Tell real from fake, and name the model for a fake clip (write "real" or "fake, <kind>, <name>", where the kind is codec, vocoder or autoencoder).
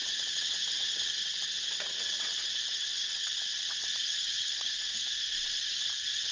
fake, vocoder, WaveNeXt